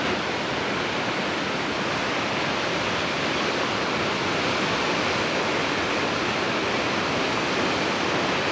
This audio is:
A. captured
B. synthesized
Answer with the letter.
A